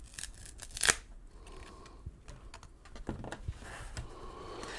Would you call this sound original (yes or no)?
yes